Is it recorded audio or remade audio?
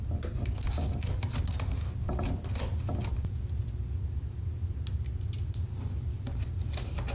recorded